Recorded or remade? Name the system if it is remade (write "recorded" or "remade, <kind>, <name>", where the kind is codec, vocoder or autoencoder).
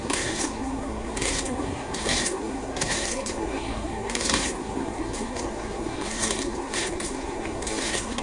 remade, codec, SNAC